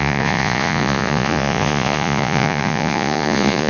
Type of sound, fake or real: fake